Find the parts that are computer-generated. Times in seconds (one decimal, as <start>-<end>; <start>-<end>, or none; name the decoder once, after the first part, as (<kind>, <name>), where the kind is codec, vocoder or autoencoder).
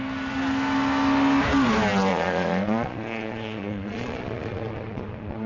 2.1-5.5 (vocoder, Vocos)